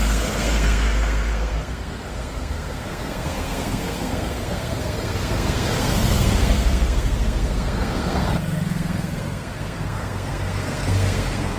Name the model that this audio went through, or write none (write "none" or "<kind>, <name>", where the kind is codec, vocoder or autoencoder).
codec, SNAC